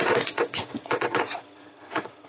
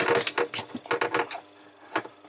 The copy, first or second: first